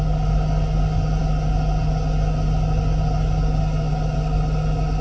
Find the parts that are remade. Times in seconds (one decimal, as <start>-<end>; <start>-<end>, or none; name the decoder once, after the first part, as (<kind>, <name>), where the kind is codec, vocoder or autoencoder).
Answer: none